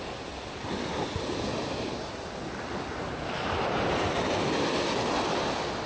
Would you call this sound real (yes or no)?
yes